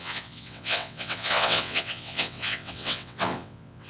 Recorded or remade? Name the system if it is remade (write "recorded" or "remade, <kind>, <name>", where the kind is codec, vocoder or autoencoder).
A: remade, vocoder, WaveNeXt